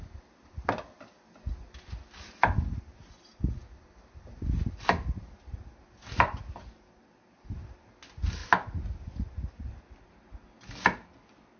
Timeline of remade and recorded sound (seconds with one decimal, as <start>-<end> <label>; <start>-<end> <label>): 0.0-11.6 recorded